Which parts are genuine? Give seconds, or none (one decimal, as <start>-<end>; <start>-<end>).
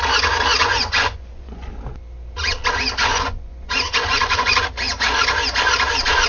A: 0.0-0.6; 1.7-3.0; 4.6-6.3